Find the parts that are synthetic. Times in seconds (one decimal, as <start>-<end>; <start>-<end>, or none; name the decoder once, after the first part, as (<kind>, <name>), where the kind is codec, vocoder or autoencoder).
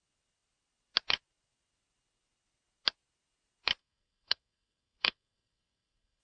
3.8-6.2 (codec, SNAC)